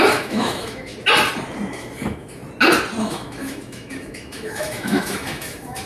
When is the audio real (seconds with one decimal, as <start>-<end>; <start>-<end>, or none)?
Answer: 0.9-1.7; 2.4-3.0